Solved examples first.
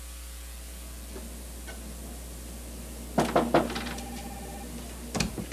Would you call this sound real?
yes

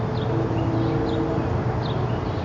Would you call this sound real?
yes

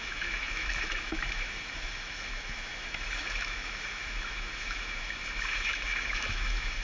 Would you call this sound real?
no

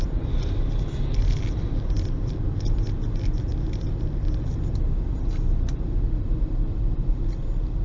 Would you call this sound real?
yes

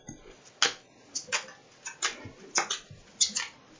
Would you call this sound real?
yes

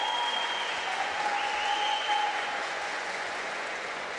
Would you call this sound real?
no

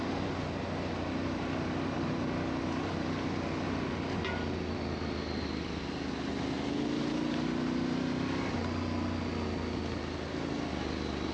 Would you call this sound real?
yes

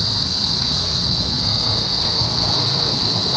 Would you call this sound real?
no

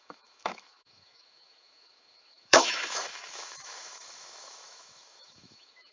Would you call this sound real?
no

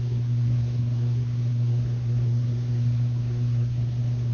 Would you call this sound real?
no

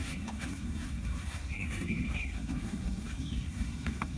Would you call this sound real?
no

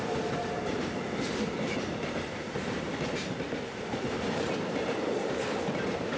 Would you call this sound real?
no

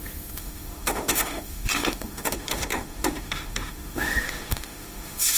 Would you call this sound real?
no